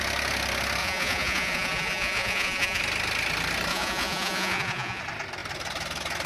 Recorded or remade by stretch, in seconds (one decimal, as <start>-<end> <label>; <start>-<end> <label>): 0.0-0.8 recorded; 0.8-2.8 remade; 2.8-3.7 recorded; 3.7-5.0 remade; 5.0-6.3 recorded